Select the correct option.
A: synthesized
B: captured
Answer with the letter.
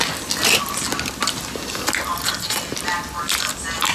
B